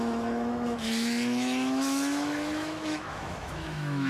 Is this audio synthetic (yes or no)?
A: yes